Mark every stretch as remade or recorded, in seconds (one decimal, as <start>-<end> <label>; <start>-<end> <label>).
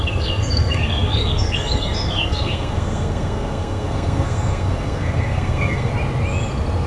0.0-5.9 remade; 5.9-6.9 recorded